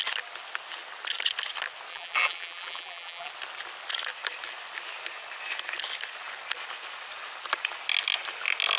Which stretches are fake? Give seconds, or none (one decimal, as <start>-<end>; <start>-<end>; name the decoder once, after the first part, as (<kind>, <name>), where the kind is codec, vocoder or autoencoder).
1.9-3.3 (vocoder, BigVGAN v2)